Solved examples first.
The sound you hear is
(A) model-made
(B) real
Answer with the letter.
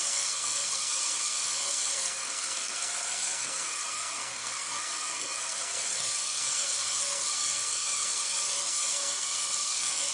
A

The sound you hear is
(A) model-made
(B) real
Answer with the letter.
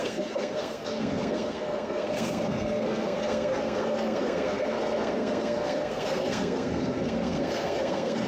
A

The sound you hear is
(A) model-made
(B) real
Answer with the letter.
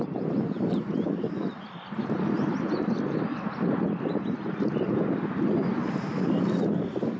B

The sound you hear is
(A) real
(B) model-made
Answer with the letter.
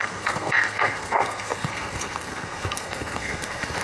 B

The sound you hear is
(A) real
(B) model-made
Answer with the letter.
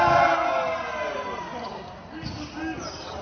A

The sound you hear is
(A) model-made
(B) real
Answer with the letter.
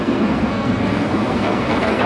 A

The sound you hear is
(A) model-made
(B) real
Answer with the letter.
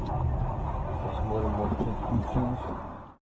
B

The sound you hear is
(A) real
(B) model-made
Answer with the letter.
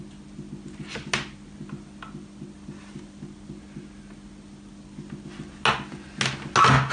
A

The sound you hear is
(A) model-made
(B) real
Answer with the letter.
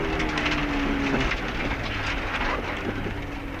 B